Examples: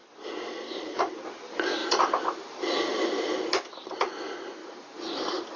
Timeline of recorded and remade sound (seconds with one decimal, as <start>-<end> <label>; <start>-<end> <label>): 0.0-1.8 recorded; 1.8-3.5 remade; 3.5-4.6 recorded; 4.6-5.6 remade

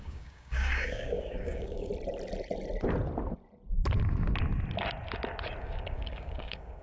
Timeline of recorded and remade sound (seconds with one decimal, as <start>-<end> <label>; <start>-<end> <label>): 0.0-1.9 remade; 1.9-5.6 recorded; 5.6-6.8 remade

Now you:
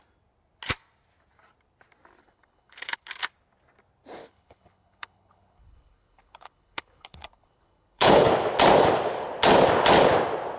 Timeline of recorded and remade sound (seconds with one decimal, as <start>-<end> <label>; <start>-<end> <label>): 0.0-2.2 recorded; 2.2-3.1 remade; 3.1-4.2 recorded; 4.2-8.3 remade; 8.3-10.6 recorded

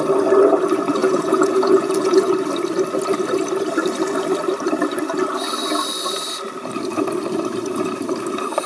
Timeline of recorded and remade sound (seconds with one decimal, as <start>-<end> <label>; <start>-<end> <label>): 0.0-1.0 recorded; 1.0-2.3 remade; 2.3-8.7 recorded

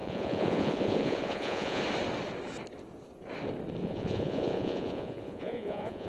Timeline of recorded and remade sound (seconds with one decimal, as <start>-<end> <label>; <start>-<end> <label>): 0.0-1.8 remade; 1.8-3.8 recorded; 3.8-6.1 remade